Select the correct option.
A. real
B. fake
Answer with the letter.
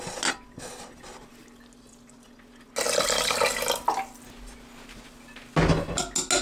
A